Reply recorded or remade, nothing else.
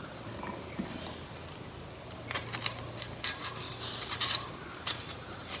remade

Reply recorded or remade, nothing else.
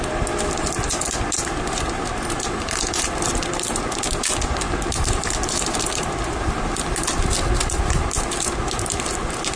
recorded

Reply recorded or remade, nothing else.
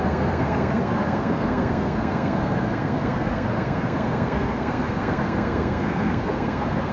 remade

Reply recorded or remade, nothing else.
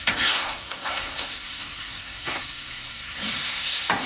remade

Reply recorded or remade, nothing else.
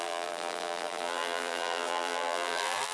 remade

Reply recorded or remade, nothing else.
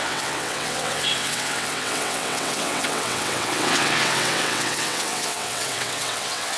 remade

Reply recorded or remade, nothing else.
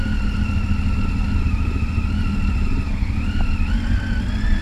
recorded